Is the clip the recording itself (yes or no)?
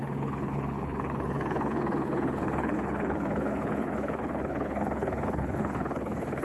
no